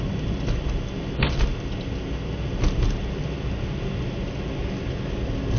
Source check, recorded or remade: recorded